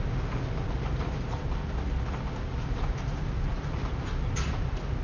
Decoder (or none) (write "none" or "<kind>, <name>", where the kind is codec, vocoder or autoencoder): none